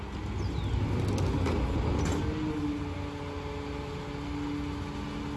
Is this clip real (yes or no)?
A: yes